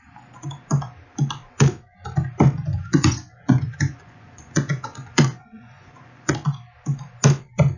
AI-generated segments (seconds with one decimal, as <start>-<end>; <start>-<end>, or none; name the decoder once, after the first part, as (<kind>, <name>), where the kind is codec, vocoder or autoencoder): 2.7-6.3 (vocoder, Vocos)